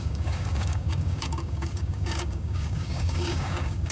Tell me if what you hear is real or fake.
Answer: fake